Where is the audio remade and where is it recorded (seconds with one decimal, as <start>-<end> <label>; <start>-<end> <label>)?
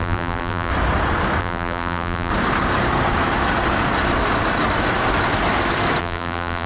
0.0-0.7 remade; 0.7-1.4 recorded; 1.4-2.3 remade; 2.3-6.0 recorded; 6.0-6.7 remade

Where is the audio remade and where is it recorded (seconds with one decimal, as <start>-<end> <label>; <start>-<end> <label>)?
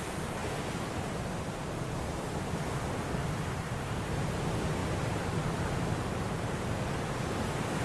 0.0-3.2 recorded; 3.2-3.9 remade; 3.9-4.8 recorded; 4.8-6.8 remade; 6.8-7.8 recorded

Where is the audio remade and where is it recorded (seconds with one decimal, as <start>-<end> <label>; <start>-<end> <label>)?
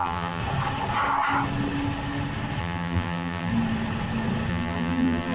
0.0-0.4 remade; 0.4-2.6 recorded; 2.6-3.5 remade; 3.5-4.5 recorded; 4.5-5.3 remade